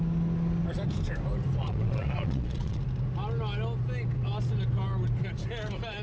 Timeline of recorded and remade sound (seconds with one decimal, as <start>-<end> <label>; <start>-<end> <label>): 0.0-1.6 recorded; 1.6-2.8 remade; 2.8-6.0 recorded